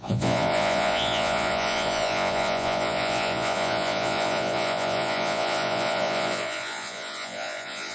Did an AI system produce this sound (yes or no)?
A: yes